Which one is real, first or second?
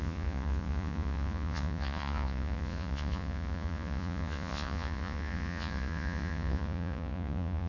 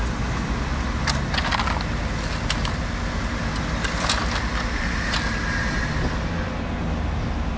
second